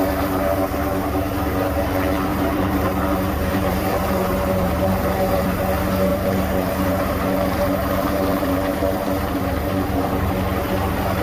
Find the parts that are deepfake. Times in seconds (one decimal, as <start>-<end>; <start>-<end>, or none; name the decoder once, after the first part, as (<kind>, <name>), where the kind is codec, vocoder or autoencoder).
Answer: 2.3-2.9 (vocoder, BigVGAN v2); 3.5-5.6; 6.1-10.3